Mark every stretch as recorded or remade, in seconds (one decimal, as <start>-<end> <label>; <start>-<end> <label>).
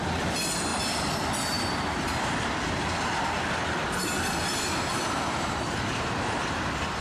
0.0-7.0 recorded